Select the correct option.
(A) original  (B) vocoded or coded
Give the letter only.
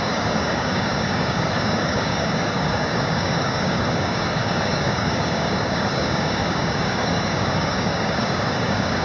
B